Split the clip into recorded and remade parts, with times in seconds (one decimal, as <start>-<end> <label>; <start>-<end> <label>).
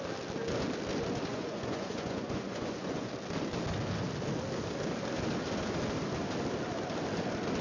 0.0-1.3 recorded; 1.3-3.1 remade; 3.1-7.6 recorded